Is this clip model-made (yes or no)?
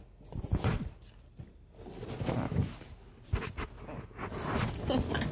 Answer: no